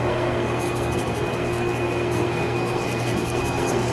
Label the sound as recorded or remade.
remade